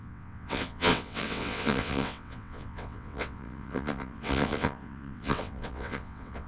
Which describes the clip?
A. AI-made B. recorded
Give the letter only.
A